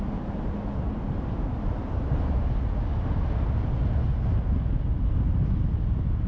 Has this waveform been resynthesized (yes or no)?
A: no